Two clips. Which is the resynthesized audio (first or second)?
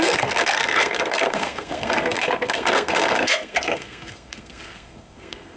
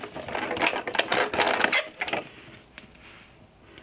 first